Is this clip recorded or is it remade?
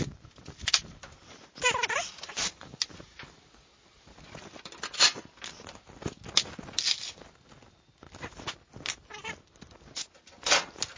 recorded